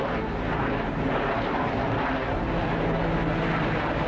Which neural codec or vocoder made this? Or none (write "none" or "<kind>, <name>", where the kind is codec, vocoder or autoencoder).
none